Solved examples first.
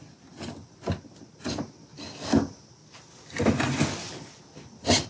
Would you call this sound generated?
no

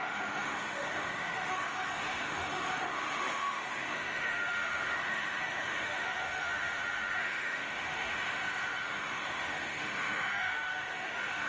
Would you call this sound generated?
yes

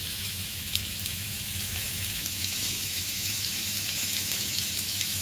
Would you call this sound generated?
yes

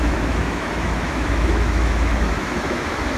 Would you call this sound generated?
yes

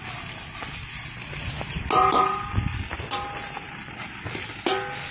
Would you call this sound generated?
no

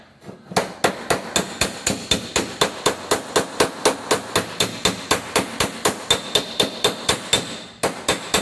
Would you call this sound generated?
no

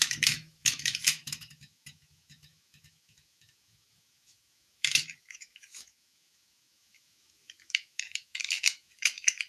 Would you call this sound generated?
yes